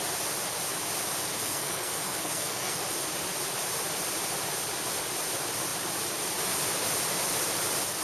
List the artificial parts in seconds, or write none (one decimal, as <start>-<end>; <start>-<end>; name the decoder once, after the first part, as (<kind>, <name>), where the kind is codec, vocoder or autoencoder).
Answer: 1.4-2.8 (codec, SNAC)

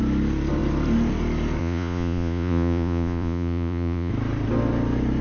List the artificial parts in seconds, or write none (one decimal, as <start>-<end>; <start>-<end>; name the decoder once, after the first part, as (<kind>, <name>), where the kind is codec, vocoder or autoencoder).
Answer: 1.6-4.1 (vocoder, Vocos)

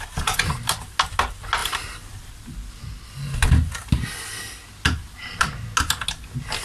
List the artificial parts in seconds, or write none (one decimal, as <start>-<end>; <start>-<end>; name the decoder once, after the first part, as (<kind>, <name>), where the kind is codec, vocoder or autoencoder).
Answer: none

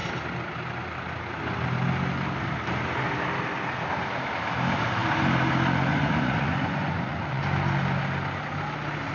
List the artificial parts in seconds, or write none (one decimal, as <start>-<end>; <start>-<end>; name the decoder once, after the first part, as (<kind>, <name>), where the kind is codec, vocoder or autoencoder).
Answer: 5.9-7.4 (vocoder, Vocos)

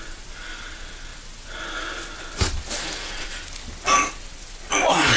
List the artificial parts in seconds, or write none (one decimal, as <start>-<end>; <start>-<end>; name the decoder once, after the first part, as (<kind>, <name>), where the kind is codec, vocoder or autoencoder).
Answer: none